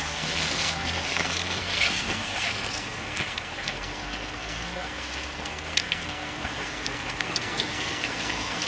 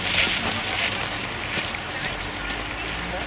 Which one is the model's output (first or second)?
first